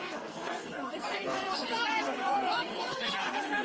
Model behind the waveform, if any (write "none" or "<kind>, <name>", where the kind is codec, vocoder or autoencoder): codec, SNAC